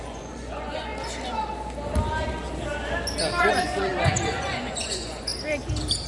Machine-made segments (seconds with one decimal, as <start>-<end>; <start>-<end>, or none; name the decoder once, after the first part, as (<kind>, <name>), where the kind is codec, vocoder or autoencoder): 0.0-0.9 (vocoder, Vocos); 3.4-5.3

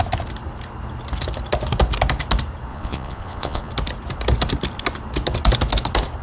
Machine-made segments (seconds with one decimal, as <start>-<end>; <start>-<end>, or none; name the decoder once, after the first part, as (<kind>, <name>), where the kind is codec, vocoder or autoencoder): 2.7-3.7 (vocoder, Vocos)

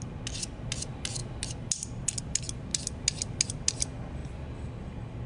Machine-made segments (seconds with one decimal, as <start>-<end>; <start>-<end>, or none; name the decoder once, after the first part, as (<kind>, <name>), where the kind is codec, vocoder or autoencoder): none